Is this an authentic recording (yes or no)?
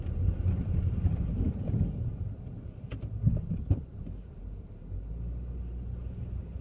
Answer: yes